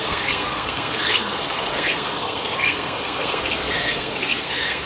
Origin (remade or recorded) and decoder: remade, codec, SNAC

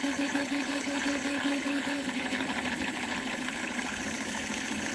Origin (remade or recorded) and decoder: remade, codec, HILCodec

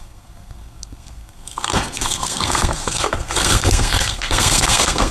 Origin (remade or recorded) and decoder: remade, codec, SNAC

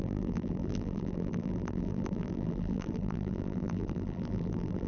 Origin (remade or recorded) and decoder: remade, vocoder, BigVGAN v2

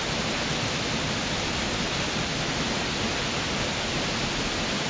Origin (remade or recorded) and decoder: recorded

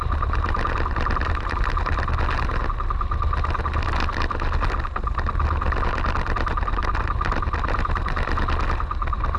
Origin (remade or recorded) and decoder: recorded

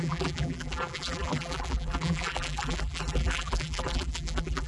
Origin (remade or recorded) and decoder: remade, vocoder, BigVGAN v2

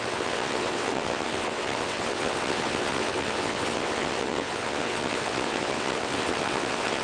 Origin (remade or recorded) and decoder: remade, vocoder, WaveNeXt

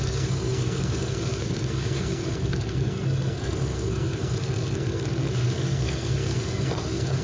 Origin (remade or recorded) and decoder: remade, codec, SNAC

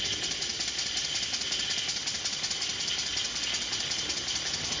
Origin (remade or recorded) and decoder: recorded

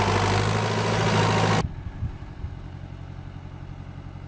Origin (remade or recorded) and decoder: recorded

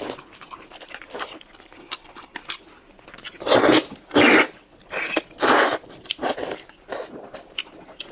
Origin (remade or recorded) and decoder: recorded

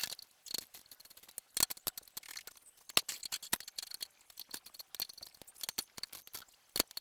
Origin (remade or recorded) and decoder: recorded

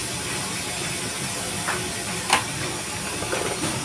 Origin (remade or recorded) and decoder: recorded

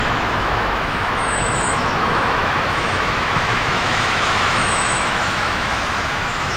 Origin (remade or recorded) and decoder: remade, autoencoder, DAC-VAE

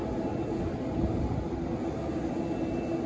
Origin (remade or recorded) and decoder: recorded